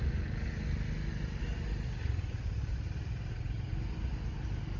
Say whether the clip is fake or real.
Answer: real